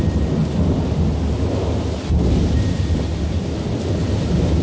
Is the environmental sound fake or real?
real